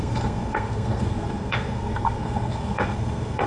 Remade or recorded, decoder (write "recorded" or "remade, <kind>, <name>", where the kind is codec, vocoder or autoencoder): remade, codec, SNAC